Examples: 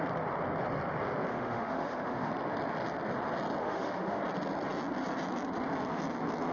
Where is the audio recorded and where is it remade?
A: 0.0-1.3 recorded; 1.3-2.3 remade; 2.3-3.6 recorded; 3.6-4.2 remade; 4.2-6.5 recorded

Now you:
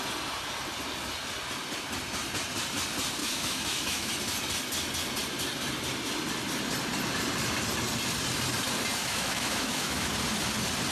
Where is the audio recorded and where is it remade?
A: 0.0-3.2 recorded; 3.2-4.1 remade; 4.1-9.0 recorded; 9.0-10.1 remade; 10.1-10.9 recorded

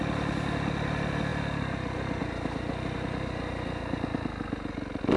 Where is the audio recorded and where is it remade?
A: 0.0-5.2 recorded

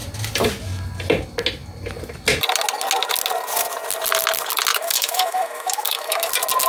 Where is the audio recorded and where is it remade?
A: 0.0-4.7 recorded; 4.7-6.3 remade; 6.3-6.7 recorded